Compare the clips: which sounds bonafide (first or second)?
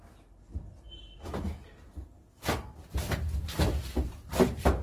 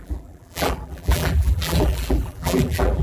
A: first